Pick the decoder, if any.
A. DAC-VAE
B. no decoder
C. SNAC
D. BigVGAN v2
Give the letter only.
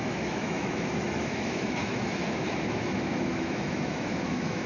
A